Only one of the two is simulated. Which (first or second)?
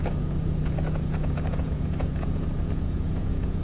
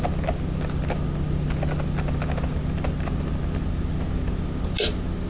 first